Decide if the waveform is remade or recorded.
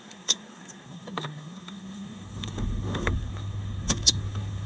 remade